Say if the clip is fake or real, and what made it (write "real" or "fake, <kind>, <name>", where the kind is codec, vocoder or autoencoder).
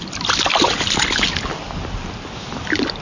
real